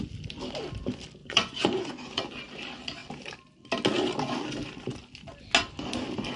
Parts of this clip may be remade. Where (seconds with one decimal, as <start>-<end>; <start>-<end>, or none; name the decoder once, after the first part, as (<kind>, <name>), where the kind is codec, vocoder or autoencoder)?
1.2-2.2 (vocoder, Vocos)